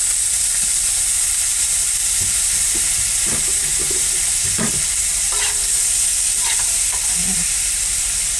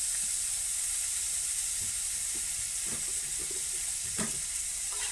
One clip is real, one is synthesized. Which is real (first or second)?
first